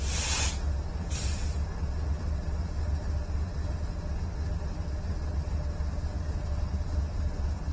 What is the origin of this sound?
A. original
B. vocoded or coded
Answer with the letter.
A